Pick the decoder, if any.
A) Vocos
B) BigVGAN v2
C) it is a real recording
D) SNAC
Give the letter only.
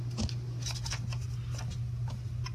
C